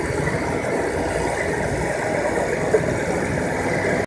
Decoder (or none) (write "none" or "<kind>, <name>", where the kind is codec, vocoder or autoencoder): none